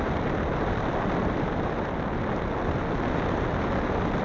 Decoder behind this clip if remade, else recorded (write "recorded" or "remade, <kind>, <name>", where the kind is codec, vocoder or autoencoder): recorded